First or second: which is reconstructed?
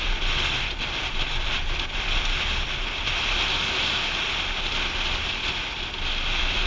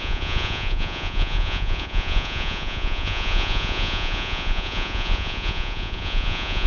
second